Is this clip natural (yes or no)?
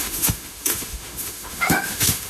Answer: no